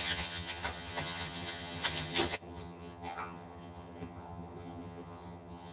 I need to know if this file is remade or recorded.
remade